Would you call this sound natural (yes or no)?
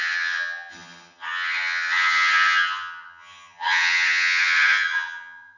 no